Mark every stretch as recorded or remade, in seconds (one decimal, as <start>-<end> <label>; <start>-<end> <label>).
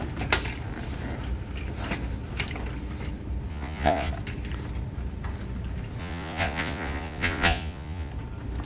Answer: 0.0-3.5 recorded; 3.5-4.1 remade; 4.1-6.0 recorded; 6.0-8.1 remade; 8.1-8.7 recorded